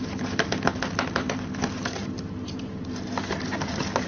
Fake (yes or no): no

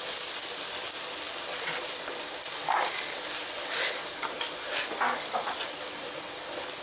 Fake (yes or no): no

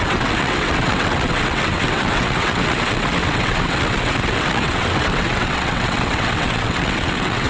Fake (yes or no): yes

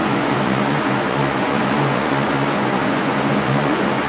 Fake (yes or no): yes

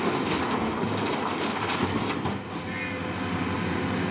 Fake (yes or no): no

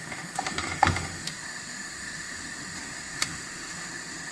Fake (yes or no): yes